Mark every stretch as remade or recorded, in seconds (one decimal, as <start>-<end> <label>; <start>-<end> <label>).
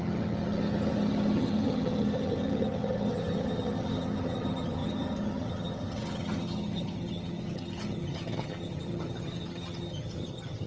0.0-10.7 remade